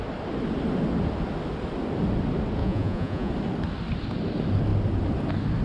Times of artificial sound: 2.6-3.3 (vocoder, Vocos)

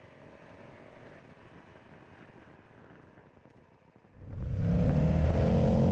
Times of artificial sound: none

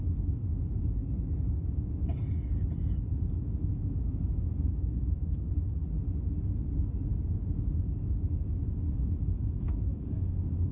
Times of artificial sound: 0.0-1.0 (autoencoder, DAC-VAE); 2.8-5.8; 7.3-10.7

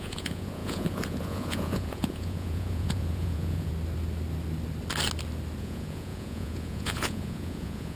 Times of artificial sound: 0.0-3.7 (vocoder, Vocos); 5.6-8.0

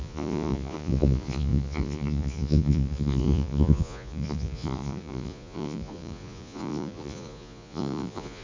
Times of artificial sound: 0.0-8.4 (vocoder, Vocos)

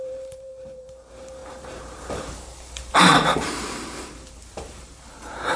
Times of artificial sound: 0.0-5.6 (vocoder, BigVGAN v2)

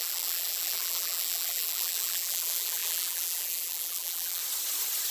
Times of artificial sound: 0.0-4.4 (vocoder, BigVGAN v2)

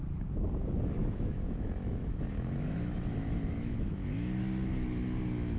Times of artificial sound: 1.0-4.4 (autoencoder, DAC-VAE)